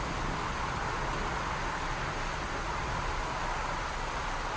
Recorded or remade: recorded